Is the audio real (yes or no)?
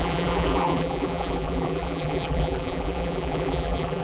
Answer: no